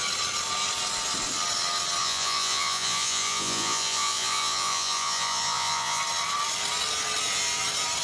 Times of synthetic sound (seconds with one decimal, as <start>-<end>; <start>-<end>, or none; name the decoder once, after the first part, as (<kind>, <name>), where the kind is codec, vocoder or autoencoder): 2.0-6.0 (vocoder, Vocos)